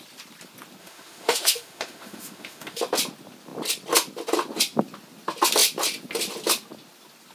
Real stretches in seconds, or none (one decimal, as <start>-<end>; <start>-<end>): 0.0-0.8; 2.8-7.3